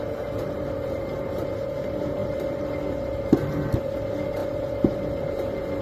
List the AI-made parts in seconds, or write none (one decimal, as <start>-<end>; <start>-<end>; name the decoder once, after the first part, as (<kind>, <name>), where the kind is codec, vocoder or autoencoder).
2.2-3.2 (vocoder, BigVGAN v2)